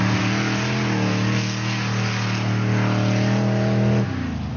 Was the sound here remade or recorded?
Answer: recorded